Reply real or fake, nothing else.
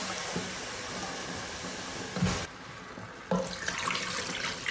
real